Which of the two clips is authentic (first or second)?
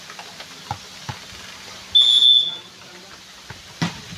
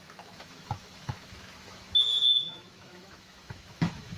first